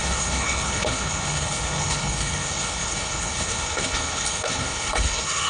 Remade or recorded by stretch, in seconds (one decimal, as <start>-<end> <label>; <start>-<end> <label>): 0.0-5.5 remade